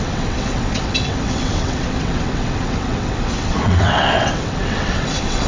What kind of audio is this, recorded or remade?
remade